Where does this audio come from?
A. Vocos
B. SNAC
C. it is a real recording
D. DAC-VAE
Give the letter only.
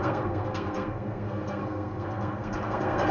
B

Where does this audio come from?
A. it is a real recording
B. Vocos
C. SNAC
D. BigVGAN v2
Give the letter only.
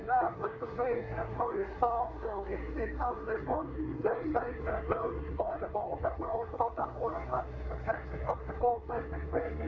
C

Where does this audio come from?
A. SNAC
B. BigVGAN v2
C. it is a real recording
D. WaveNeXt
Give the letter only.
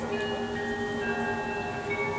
C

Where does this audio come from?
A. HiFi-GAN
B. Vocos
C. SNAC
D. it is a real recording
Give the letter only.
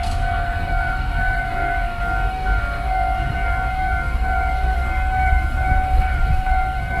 C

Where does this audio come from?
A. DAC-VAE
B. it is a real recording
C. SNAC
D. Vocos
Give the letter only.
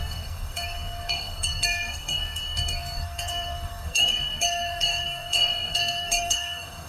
C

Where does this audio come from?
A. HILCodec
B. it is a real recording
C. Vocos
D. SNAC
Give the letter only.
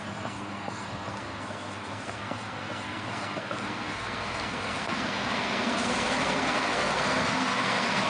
D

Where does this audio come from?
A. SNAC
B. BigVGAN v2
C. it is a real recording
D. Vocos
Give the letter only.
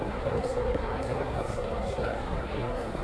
A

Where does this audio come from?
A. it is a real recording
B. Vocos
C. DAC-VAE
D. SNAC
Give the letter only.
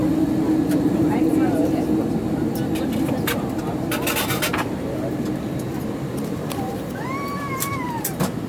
A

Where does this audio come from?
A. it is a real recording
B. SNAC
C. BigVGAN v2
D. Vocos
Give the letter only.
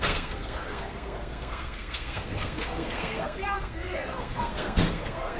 B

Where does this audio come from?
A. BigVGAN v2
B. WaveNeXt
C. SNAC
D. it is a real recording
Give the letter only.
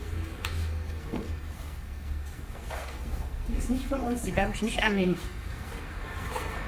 C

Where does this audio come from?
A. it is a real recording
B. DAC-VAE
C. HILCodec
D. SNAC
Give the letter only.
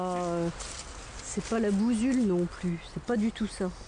A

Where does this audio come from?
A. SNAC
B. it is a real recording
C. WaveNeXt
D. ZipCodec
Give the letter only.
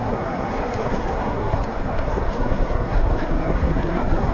A